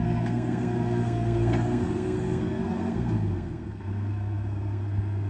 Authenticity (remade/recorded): remade